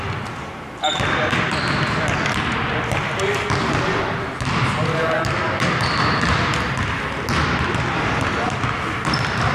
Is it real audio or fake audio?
real